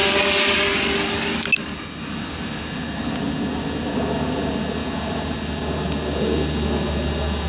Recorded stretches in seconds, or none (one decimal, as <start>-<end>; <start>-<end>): 0.0-7.5